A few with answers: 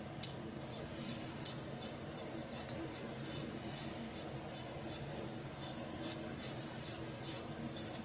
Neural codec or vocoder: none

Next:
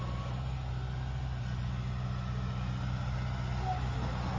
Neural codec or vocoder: none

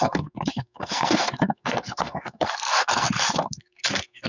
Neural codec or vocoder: codec, SNAC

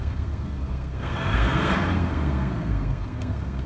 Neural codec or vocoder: codec, SNAC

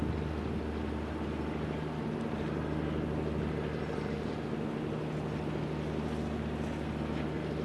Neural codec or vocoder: none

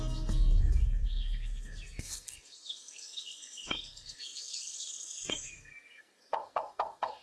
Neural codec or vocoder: codec, SNAC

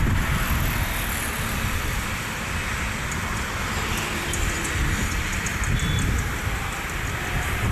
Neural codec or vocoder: none